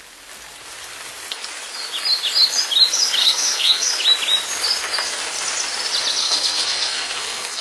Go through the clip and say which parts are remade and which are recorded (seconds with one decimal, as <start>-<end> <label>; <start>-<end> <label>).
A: 0.0-3.2 recorded; 3.2-3.9 remade; 3.9-6.2 recorded; 6.2-7.6 remade